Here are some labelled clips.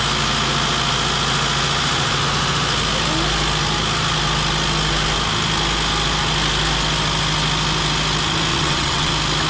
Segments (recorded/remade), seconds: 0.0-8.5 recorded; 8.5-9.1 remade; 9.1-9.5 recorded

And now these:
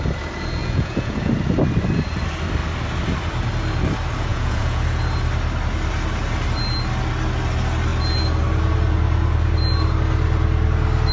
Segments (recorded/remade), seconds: 0.0-0.6 recorded; 0.6-1.3 remade; 1.3-4.3 recorded; 4.3-4.8 remade; 4.8-11.1 recorded

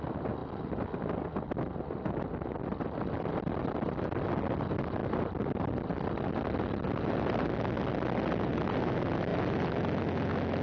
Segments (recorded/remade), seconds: 0.0-10.6 recorded

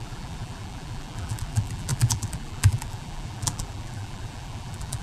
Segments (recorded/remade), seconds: 0.0-5.0 remade